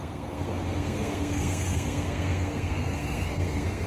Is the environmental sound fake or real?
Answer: fake